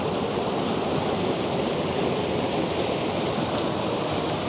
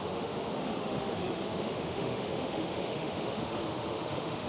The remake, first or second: second